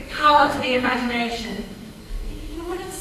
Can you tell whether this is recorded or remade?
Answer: remade